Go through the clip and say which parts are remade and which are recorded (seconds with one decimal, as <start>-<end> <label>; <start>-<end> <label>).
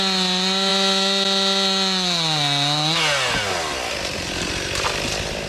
0.0-0.7 remade; 0.7-3.9 recorded; 3.9-5.5 remade